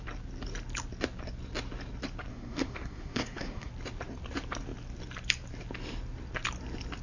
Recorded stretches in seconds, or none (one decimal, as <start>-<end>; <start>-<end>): 0.0-2.3; 3.7-7.0